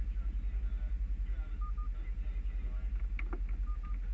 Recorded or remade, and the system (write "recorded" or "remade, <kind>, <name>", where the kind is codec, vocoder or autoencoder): recorded